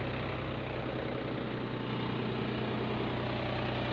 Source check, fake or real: real